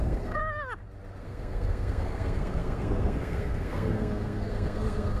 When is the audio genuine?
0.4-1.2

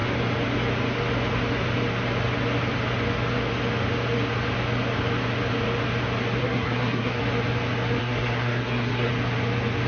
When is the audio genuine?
0.0-6.4; 7.2-8.0; 9.1-9.9

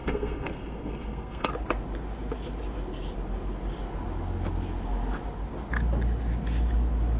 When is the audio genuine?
1.5-7.2

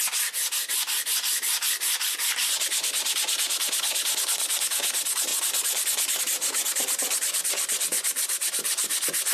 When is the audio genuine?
0.0-9.3

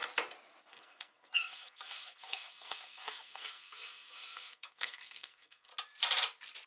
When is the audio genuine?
0.0-0.7; 5.7-6.7

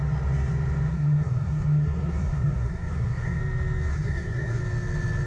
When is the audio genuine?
0.0-0.9; 3.4-3.9; 4.6-5.3

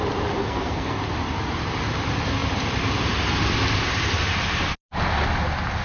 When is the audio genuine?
0.0-0.4; 1.0-5.8

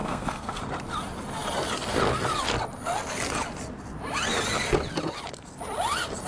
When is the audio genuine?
0.6-6.3